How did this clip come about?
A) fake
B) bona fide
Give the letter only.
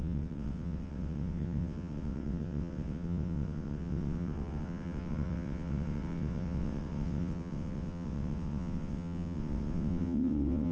A